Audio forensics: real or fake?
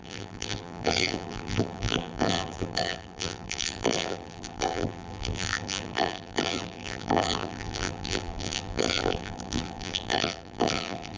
fake